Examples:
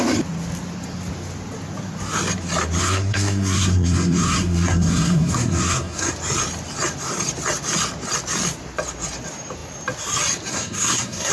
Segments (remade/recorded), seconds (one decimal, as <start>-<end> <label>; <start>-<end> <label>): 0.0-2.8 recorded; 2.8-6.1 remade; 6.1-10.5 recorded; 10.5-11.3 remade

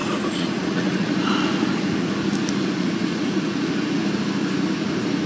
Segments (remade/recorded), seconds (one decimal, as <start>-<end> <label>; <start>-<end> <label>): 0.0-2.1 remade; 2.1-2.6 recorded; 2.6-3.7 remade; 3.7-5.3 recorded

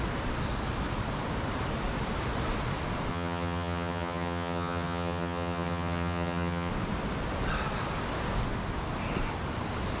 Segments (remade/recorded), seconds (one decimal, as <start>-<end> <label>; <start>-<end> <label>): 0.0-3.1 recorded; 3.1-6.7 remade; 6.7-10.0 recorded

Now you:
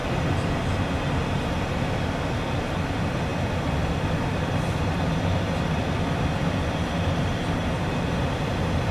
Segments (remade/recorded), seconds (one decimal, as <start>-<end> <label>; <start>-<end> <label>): 0.0-2.6 recorded; 2.6-7.6 remade; 7.6-8.2 recorded; 8.2-8.9 remade